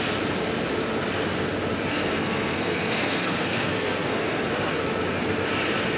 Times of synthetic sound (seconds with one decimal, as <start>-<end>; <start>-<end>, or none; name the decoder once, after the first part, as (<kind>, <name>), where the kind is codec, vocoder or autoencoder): 1.9-4.7 (codec, SNAC)